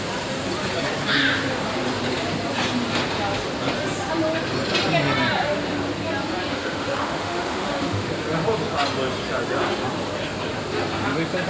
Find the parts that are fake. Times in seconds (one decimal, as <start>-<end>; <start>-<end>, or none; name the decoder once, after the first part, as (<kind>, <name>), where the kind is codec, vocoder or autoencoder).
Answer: 6.5-8.1 (autoencoder, DAC-VAE)